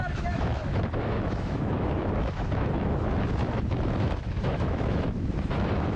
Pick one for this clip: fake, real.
fake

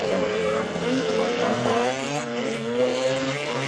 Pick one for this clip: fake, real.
fake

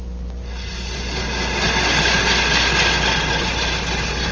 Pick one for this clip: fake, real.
real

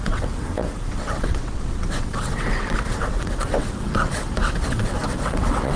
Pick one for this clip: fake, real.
fake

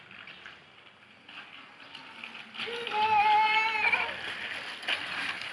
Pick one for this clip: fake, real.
real